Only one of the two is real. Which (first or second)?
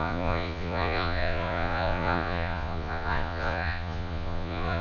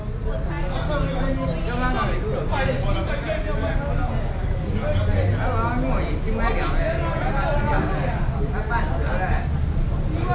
second